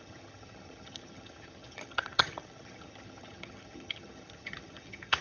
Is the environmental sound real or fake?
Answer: fake